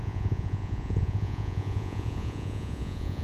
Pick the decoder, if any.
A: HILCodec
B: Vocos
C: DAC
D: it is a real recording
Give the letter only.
B